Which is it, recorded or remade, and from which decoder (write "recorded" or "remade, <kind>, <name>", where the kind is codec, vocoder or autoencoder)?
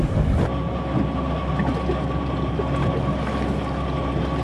recorded